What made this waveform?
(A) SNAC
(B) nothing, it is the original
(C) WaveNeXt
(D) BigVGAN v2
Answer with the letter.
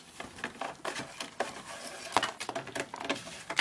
B